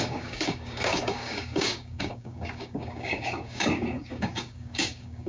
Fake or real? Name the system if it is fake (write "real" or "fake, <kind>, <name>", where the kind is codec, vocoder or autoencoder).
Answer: fake, codec, DAC